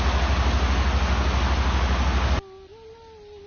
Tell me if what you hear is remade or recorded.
recorded